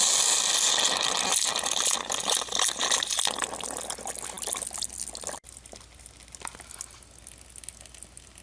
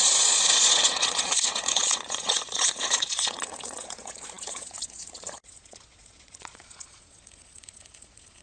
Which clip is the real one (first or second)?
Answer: first